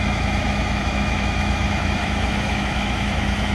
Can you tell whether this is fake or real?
fake